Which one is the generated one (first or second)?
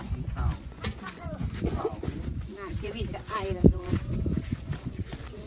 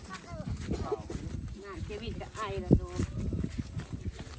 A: first